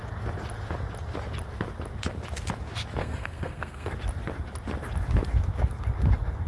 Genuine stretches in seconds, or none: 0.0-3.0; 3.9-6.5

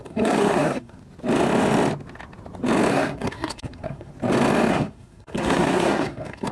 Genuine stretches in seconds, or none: 1.0-2.9; 4.1-4.7

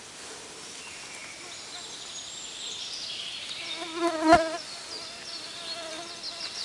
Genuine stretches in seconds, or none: 0.0-6.6